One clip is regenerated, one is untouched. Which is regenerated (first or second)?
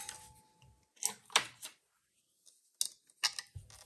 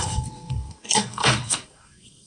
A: second